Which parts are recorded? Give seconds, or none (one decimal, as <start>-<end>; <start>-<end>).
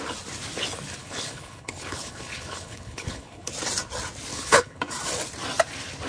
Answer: 0.0-1.0; 3.5-4.3; 4.8-6.1